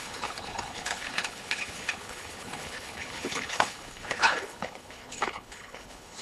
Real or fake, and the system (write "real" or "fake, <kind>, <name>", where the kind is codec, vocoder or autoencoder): fake, codec, HILCodec